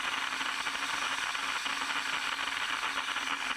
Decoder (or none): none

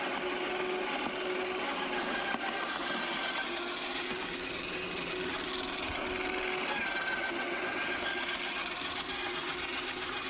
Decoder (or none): none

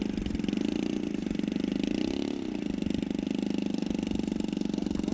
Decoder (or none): none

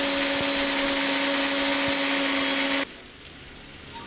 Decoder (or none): none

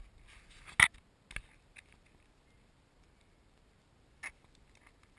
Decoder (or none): none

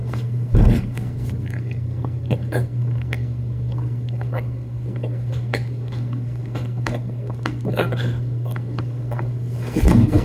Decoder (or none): codec, SNAC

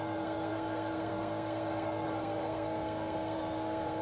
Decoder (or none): codec, SNAC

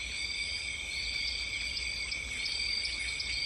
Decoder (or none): none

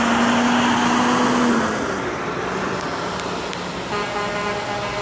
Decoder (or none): none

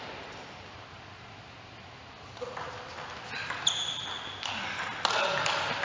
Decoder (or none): none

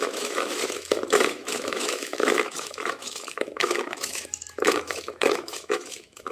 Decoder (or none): autoencoder, DAC-VAE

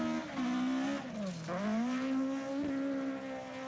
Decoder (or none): none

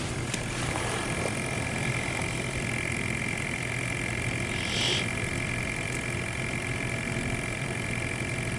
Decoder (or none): vocoder, BigVGAN v2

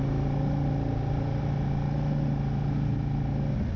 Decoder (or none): none